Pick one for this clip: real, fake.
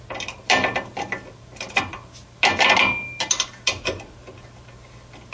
real